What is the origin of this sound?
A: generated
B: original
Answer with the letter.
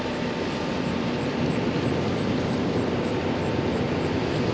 B